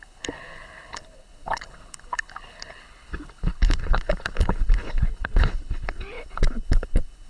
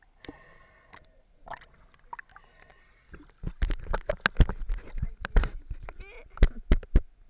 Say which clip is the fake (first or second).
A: first